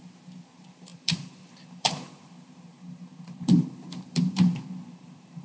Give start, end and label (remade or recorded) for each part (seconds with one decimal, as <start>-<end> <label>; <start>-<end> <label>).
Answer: 0.0-5.4 remade